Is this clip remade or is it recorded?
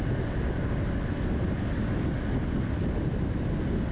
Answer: recorded